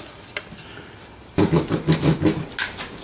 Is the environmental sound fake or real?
real